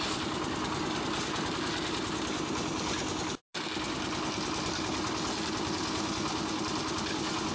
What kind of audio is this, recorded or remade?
recorded